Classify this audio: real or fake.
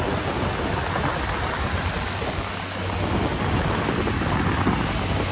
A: real